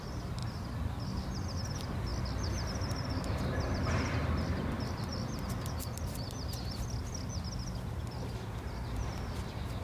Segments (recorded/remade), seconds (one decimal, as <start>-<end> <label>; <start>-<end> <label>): 0.0-9.8 recorded